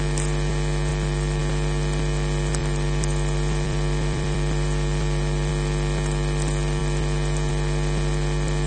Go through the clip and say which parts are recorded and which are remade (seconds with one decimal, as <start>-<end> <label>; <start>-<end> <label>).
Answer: 0.0-0.9 recorded; 0.9-1.4 remade; 1.4-2.6 recorded; 2.6-5.5 remade; 5.5-8.7 recorded